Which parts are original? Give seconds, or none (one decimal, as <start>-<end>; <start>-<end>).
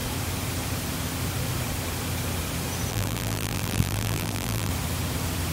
0.0-2.9; 4.7-5.5